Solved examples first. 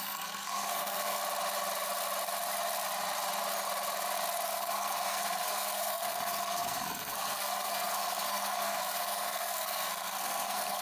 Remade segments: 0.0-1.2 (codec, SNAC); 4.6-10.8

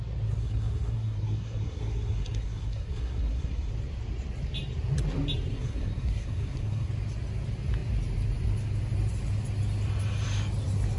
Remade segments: 0.4-3.7 (codec, SNAC); 5.5-6.9

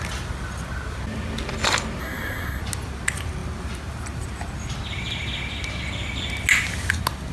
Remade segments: 2.0-2.6 (codec, SNAC)

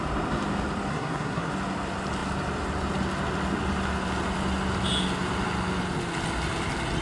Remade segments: 0.9-1.5 (codec, SNAC)

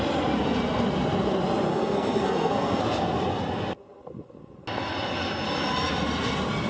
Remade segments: 1.7-2.8 (codec, SNAC)

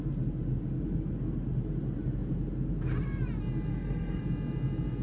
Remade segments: 3.7-4.2 (codec, SNAC)

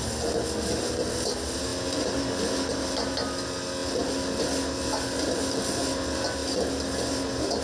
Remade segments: none

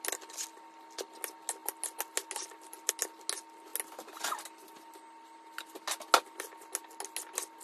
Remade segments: none